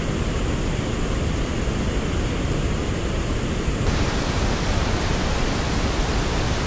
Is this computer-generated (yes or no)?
no